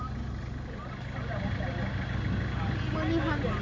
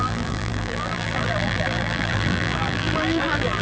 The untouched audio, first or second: first